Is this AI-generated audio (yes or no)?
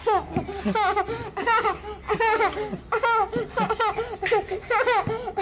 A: no